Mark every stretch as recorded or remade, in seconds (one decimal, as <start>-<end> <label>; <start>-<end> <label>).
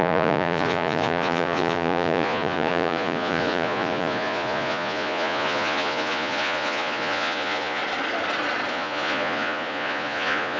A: 0.0-7.8 remade; 7.8-8.7 recorded; 8.7-10.6 remade